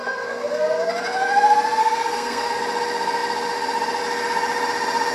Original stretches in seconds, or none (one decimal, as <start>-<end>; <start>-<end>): 0.9-1.8; 2.6-5.1